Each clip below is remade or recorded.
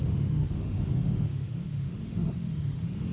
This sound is remade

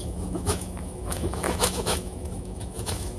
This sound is remade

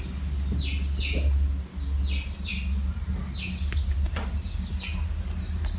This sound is recorded